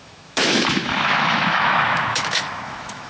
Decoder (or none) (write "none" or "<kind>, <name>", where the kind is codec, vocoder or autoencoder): autoencoder, DAC-VAE